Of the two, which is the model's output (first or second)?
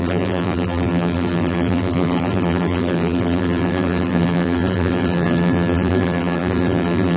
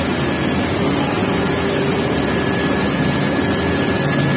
first